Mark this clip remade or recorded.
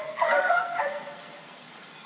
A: remade